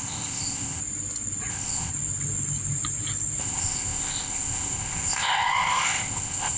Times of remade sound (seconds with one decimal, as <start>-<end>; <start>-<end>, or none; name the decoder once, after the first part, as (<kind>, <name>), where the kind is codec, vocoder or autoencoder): 0.0-0.8 (codec, ZipCodec); 1.5-1.9; 3.4-6.6